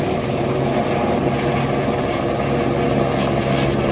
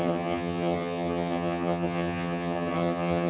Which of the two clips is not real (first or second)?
second